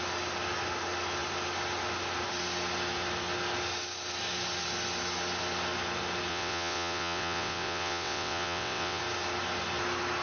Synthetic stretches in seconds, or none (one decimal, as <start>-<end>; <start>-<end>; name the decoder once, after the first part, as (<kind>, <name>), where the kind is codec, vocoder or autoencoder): 6.3-9.0 (vocoder, WaveNeXt)